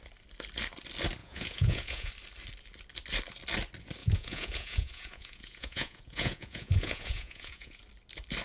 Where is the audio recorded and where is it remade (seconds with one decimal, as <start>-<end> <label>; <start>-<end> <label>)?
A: 0.0-1.2 recorded; 1.2-2.1 remade; 2.1-4.0 recorded; 4.0-7.8 remade; 7.8-8.4 recorded